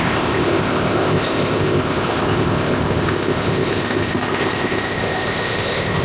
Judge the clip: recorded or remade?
remade